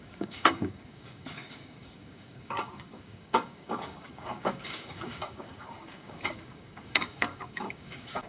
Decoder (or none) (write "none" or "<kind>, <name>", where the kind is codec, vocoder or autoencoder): codec, DAC